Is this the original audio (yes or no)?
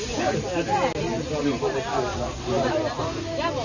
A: yes